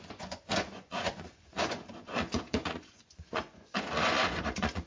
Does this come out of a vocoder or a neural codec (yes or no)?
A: yes